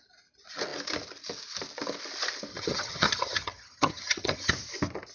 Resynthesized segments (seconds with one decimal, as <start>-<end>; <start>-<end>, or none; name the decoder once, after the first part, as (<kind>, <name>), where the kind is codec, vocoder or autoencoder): 2.5-4.5 (vocoder, HiFi-GAN)